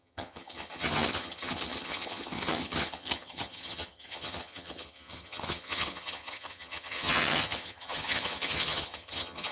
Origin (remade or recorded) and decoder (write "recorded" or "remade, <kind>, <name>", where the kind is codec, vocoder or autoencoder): remade, vocoder, HiFi-GAN